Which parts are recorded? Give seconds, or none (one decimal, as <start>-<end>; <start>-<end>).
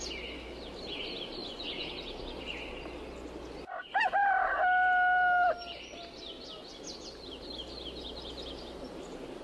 0.0-1.4; 1.9-9.4